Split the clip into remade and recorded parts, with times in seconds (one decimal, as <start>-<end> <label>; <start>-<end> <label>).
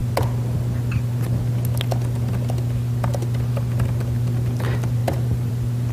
0.0-5.0 recorded; 5.0-5.5 remade; 5.5-5.9 recorded